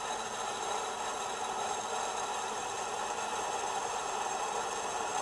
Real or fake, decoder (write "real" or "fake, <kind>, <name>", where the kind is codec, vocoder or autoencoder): fake, vocoder, BigVGAN v2